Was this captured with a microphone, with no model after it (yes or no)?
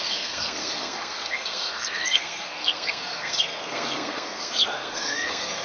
no